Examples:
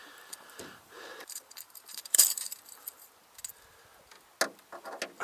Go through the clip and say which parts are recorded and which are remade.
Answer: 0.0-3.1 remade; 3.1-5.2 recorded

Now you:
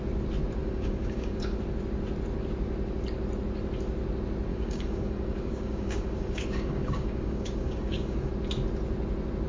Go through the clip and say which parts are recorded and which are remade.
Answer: 0.0-0.6 recorded; 0.6-1.6 remade; 1.6-4.5 recorded; 4.5-8.3 remade; 8.3-9.5 recorded

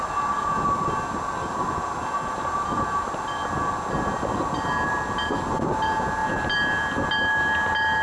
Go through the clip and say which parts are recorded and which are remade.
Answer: 0.0-8.0 recorded

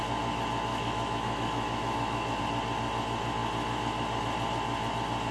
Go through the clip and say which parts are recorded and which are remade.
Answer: 0.0-0.7 recorded; 0.7-2.4 remade; 2.4-5.3 recorded

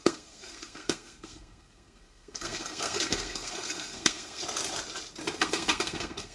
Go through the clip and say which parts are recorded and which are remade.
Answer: 0.0-4.4 remade; 4.4-5.4 recorded; 5.4-6.3 remade

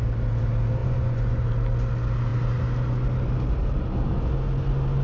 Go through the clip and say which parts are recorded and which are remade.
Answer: 0.0-0.8 recorded; 0.8-1.5 remade; 1.5-5.0 recorded

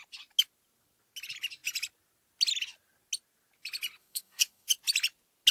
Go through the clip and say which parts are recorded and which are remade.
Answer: 0.0-4.0 recorded; 4.0-4.7 remade; 4.7-5.5 recorded

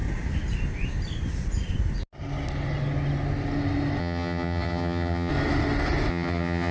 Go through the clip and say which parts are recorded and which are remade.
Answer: 0.0-4.0 recorded; 4.0-5.3 remade; 5.3-6.1 recorded; 6.1-6.7 remade